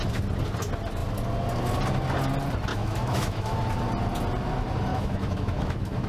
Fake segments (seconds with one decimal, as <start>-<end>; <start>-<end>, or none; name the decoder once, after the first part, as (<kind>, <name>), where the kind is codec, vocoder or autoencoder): 2.7-3.6 (autoencoder, DAC-VAE); 4.9-6.1